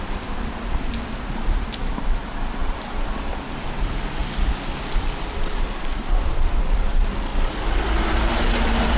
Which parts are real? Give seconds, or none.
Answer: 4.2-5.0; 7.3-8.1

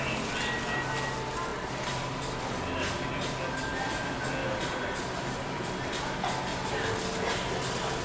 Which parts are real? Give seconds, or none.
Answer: 0.0-1.5; 2.4-4.4; 5.7-6.5; 7.0-8.0

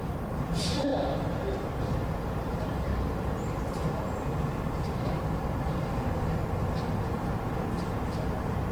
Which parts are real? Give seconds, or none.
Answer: 0.9-1.8; 6.4-7.9

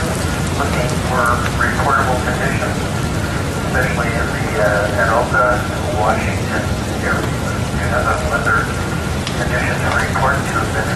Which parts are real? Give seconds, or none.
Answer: 0.0-2.7; 7.8-11.0

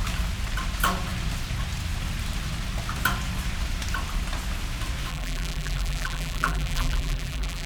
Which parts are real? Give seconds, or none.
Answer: 0.0-5.1

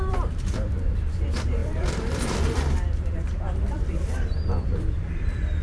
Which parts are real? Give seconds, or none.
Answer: none

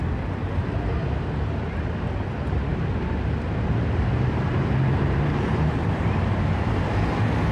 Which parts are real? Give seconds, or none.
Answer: 0.0-2.7; 6.9-7.5

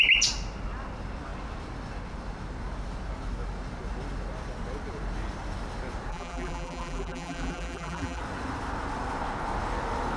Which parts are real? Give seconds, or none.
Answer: 0.0-6.1; 8.2-10.2